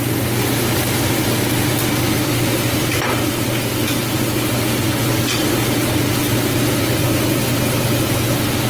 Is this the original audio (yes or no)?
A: yes